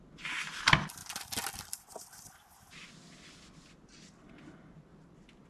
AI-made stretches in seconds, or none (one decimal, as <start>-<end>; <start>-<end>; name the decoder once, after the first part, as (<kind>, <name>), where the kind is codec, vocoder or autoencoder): none